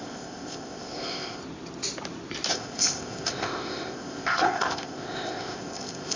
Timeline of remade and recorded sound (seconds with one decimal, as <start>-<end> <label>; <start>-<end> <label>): 0.0-1.4 remade; 1.4-2.5 recorded; 2.5-6.2 remade